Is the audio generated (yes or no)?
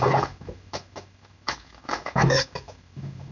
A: yes